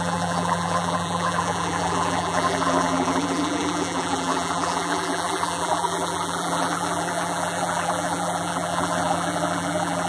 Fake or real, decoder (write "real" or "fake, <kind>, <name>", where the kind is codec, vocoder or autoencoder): fake, vocoder, BigVGAN v2